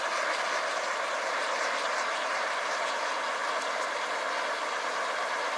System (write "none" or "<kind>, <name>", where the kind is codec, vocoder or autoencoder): none